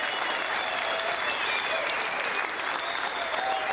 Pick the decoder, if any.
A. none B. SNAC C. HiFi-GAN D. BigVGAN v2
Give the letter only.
A